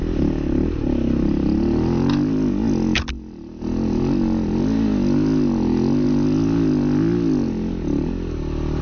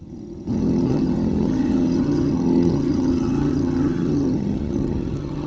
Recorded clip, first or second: first